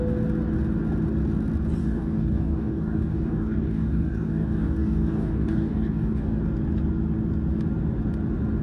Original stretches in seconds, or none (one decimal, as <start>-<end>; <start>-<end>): 0.0-1.8; 6.4-8.6